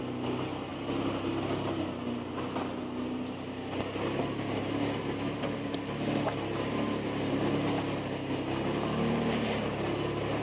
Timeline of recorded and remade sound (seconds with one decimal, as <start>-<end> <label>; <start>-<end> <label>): 0.0-10.4 recorded